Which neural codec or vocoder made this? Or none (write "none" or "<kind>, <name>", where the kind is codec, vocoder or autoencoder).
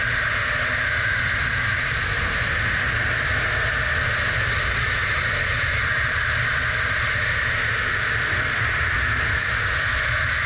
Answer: none